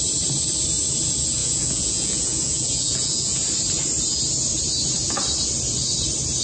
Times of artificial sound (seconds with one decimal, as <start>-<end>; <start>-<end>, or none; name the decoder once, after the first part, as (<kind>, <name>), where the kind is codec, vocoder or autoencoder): 1.4-3.4 (vocoder, Vocos)